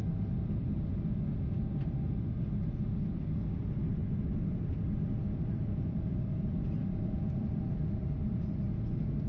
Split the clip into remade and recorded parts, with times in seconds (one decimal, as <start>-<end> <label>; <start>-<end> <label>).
0.0-4.0 recorded; 4.0-6.3 remade; 6.3-6.8 recorded; 6.8-8.4 remade; 8.4-9.3 recorded